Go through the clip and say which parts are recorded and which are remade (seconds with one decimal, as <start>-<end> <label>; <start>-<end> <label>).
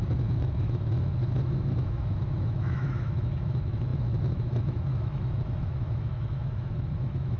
0.0-7.4 remade